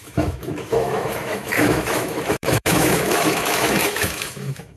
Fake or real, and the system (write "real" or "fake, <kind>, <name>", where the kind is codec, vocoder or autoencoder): fake, autoencoder, DAC-VAE